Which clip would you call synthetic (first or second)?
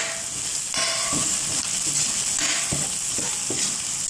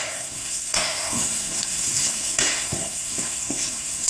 second